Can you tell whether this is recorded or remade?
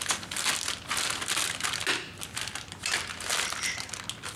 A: recorded